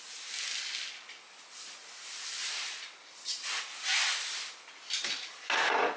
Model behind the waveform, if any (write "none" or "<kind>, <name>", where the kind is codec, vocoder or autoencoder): none